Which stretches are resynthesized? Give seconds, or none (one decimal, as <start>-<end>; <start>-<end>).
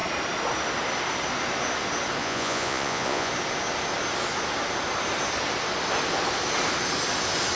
2.2-3.3